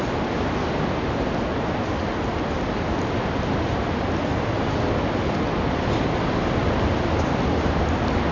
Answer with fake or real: real